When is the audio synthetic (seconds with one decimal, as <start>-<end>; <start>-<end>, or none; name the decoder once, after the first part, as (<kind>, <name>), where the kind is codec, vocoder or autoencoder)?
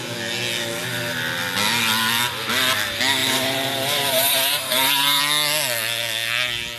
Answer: 3.2-5.2 (vocoder, BigVGAN v2)